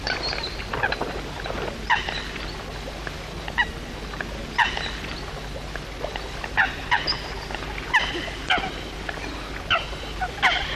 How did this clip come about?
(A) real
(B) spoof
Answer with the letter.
A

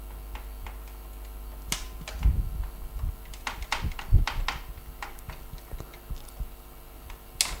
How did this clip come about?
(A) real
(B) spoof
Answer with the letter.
A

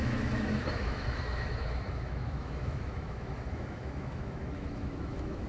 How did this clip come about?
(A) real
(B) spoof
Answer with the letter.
B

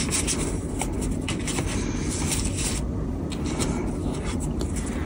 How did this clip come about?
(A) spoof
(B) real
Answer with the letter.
B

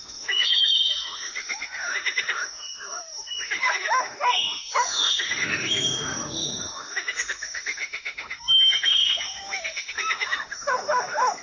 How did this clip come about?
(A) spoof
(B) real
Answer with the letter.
A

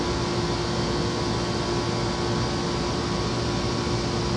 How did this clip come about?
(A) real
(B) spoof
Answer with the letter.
A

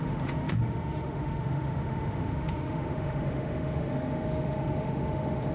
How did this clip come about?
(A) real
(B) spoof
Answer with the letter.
B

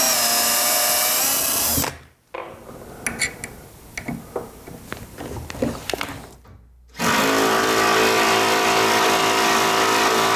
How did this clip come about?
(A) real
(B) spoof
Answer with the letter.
A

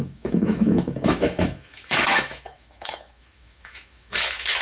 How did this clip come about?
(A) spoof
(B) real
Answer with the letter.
A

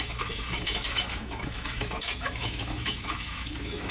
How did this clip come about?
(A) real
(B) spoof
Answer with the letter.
B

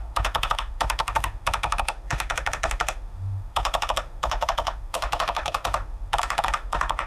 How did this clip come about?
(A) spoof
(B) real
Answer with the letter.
A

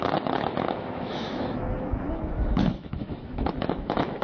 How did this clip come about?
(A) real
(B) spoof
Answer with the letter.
B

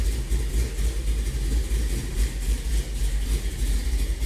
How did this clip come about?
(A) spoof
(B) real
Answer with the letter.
B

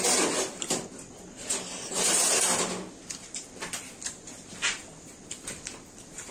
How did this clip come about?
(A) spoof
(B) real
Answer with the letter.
B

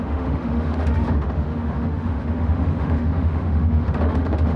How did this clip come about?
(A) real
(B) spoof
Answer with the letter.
B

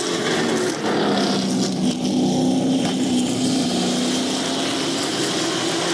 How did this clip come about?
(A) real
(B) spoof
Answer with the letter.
A